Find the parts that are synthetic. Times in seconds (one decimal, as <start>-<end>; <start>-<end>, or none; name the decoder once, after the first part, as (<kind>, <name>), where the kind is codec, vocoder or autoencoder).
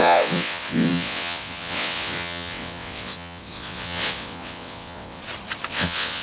0.0-5.2 (vocoder, WaveNeXt); 5.7-6.2